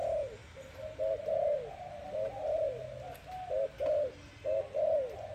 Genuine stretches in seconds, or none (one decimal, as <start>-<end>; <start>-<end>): 0.0-5.3